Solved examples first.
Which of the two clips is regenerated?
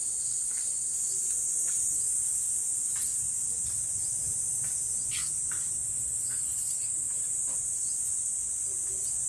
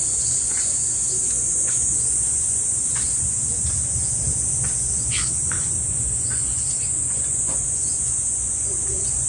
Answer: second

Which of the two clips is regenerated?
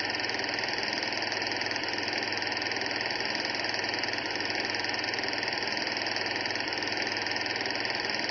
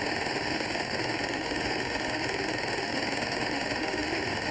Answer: second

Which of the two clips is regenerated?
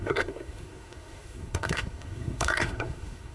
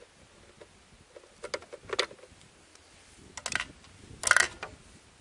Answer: first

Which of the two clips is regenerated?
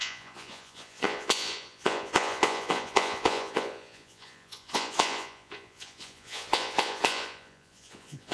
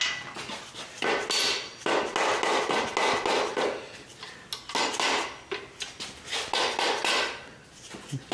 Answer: first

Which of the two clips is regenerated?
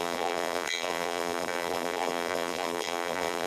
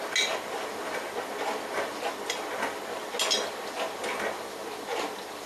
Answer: first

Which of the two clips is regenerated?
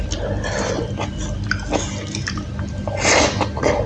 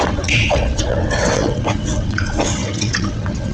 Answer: second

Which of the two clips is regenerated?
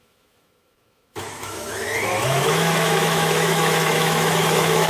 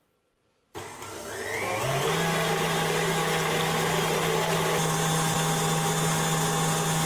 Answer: first